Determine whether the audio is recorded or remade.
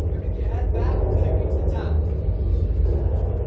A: recorded